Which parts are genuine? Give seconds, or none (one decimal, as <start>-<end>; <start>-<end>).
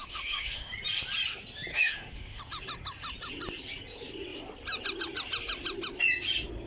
0.7-1.7; 2.4-6.7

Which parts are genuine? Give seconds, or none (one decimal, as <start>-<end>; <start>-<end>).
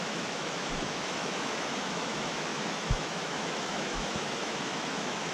none